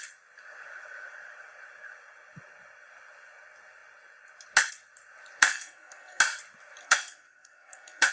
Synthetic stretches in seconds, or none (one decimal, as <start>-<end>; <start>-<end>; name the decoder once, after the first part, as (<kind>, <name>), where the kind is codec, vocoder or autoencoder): 5.4-6.2 (codec, SNAC); 6.8-8.1